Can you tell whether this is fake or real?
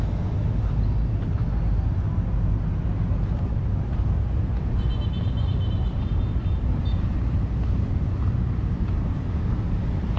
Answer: real